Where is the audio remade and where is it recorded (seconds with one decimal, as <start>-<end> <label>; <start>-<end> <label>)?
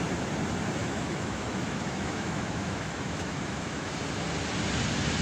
0.0-0.8 recorded; 0.8-3.9 remade; 3.9-5.2 recorded